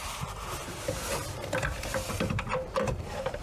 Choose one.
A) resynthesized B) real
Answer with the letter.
A